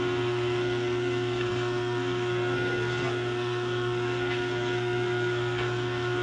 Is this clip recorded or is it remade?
remade